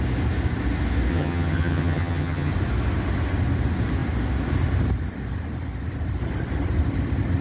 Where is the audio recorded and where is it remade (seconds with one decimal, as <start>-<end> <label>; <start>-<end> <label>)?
0.0-1.1 recorded; 1.1-2.5 remade; 2.5-7.4 recorded